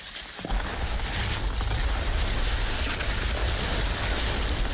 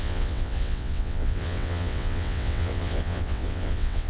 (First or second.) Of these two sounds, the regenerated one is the second